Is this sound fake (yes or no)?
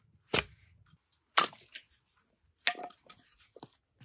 no